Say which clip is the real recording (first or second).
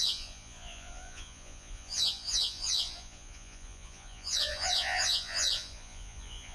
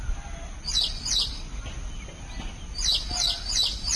second